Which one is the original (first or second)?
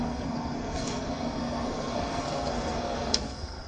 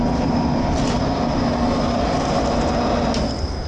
second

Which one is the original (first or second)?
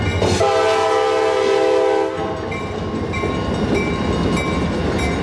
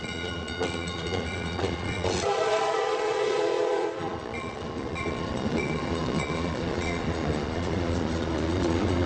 first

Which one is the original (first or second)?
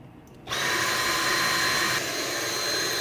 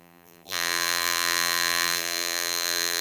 first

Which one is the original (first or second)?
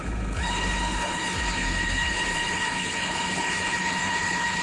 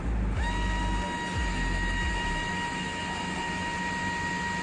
second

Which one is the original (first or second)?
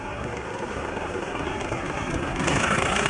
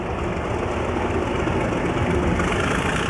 second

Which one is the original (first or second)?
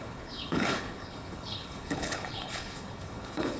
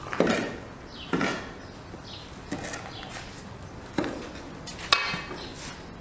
second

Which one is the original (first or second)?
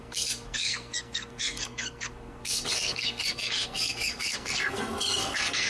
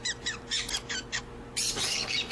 second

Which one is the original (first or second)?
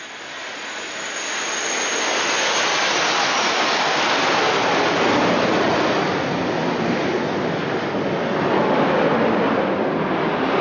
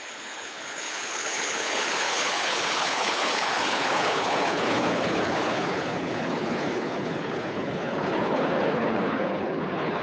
first